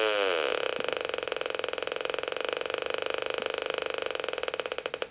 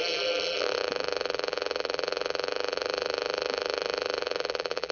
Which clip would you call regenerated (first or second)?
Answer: second